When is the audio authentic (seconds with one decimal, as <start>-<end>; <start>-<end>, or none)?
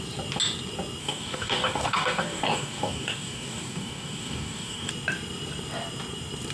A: 0.0-1.0; 4.9-6.5